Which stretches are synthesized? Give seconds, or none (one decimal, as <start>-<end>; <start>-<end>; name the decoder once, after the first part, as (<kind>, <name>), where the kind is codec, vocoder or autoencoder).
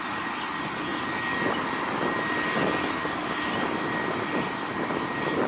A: none